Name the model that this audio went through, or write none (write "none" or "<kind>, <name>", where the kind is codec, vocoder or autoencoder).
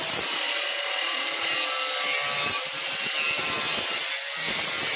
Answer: none